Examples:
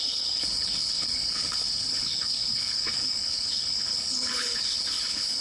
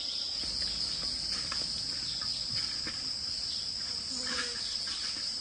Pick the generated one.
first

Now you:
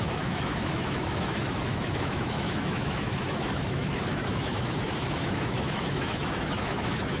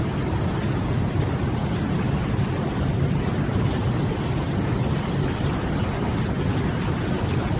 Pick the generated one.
first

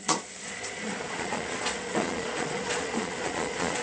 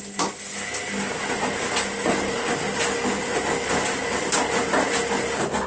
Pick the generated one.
first